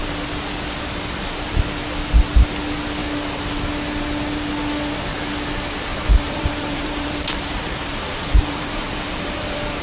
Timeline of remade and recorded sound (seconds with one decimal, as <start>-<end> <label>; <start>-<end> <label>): 0.0-5.9 recorded; 5.9-9.8 remade